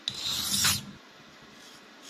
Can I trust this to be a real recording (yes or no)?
yes